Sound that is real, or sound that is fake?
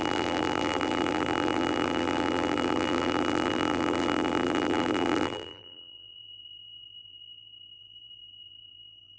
fake